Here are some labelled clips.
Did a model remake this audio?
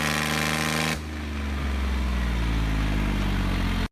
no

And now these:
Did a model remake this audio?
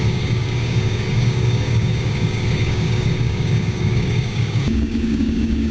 yes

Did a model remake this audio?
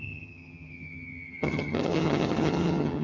yes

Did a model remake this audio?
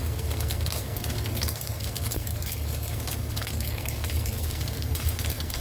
yes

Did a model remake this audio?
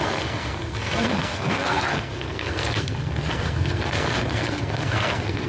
yes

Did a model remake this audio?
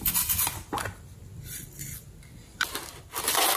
no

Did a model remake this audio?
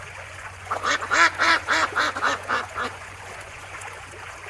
yes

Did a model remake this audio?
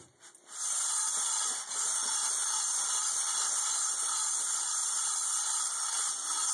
no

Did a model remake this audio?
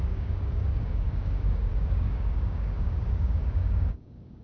yes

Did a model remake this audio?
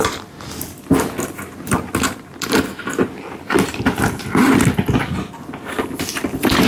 no